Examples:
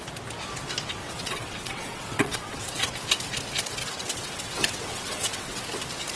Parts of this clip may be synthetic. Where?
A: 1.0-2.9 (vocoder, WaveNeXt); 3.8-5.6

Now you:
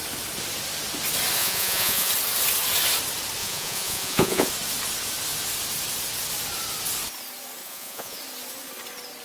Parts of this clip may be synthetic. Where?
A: 1.4-2.1 (vocoder, Vocos); 3.4-4.5; 7.6-8.2

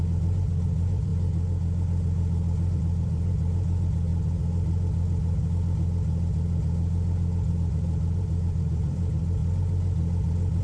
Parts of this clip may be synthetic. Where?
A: 0.0-1.1 (vocoder, BigVGAN v2); 2.8-4.1; 7.5-9.4

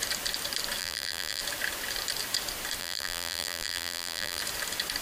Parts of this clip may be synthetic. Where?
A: 0.8-1.4 (vocoder, BigVGAN v2); 2.8-4.4

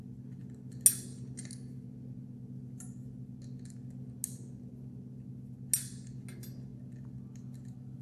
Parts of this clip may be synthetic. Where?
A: none